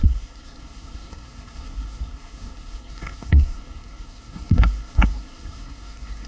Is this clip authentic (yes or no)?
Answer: no